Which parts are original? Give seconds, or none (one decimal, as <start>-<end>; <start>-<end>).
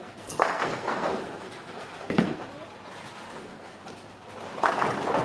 2.4-3.3; 3.8-5.2